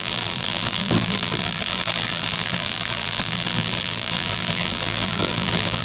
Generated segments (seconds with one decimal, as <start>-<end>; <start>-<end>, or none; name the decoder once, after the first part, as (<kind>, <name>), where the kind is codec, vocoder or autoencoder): 0.0-5.8 (vocoder, BigVGAN v2)